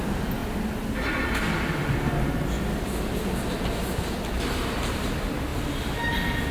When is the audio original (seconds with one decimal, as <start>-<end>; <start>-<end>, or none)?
0.0-6.5